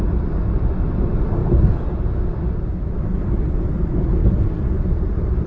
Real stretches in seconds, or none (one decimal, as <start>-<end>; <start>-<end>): 0.0-1.4; 2.0-4.2